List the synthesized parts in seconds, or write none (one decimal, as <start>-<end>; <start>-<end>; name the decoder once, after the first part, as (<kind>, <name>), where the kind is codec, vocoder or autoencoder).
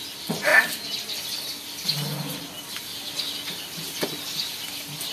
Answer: 0.0-0.5 (vocoder, BigVGAN v2); 3.2-5.1